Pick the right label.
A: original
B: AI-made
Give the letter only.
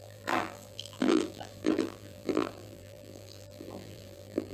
B